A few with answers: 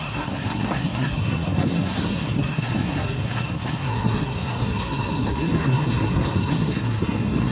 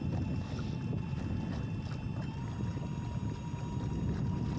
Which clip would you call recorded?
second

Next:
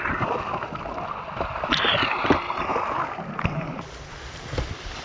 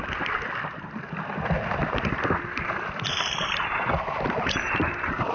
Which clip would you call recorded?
first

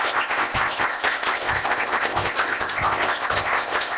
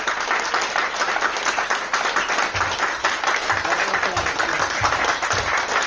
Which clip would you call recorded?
second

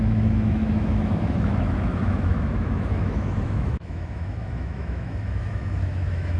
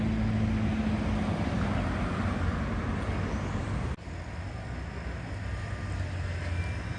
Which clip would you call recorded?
second